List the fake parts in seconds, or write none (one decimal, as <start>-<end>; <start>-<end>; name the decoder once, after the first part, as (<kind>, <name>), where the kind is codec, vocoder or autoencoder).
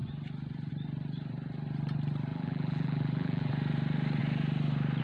2.3-3.5 (vocoder, BigVGAN v2)